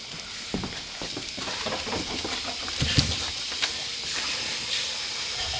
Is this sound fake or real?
fake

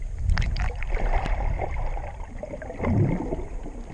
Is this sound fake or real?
real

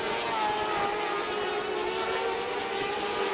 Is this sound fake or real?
real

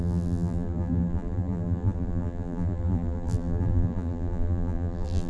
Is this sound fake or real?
fake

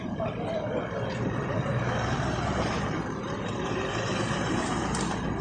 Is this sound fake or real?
fake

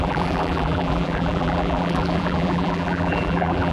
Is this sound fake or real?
fake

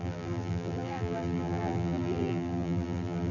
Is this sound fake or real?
fake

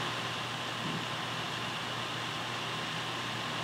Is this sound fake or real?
real